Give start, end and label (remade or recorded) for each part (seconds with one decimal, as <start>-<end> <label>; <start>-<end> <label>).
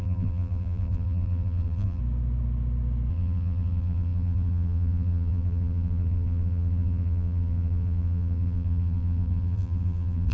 0.0-2.0 remade; 2.0-3.1 recorded; 3.1-10.3 remade